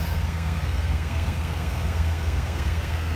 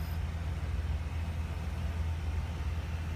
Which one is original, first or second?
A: second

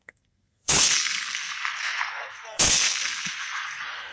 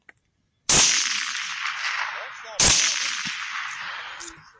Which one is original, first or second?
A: second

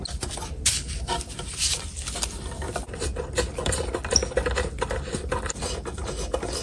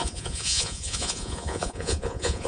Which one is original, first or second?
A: first